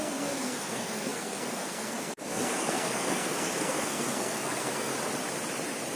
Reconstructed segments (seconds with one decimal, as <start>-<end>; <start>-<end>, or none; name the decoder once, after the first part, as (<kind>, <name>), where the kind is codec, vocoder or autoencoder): 0.0-4.9 (codec, SNAC)